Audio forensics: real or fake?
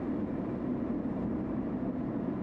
fake